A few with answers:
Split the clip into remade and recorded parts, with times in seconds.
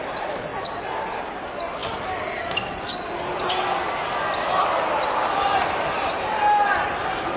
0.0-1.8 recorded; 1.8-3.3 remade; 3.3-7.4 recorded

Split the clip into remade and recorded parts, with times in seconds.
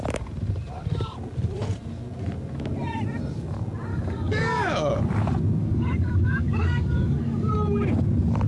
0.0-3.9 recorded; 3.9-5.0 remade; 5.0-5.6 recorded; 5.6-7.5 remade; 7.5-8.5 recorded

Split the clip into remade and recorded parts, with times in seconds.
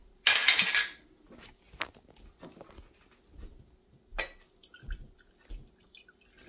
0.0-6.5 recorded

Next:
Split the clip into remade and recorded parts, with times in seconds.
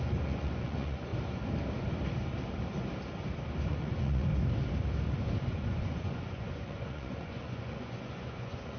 0.0-1.1 remade; 1.1-3.7 recorded; 3.7-4.3 remade; 4.3-5.5 recorded; 5.5-8.8 remade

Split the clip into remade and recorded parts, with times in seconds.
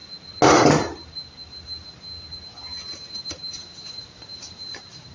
0.0-3.1 recorded; 3.1-5.1 remade